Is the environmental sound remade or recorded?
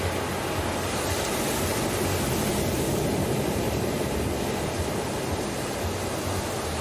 recorded